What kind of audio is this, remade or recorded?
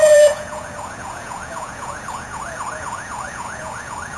remade